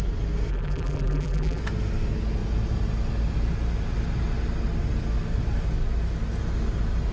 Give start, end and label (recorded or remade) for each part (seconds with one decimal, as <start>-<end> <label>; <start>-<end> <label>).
0.0-0.5 recorded; 0.5-1.6 remade; 1.6-7.1 recorded